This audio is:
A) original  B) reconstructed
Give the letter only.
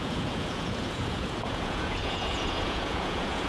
B